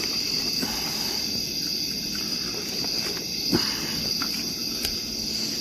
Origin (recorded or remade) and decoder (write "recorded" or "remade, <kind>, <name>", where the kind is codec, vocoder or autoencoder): recorded